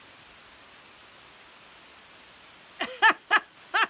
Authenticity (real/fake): real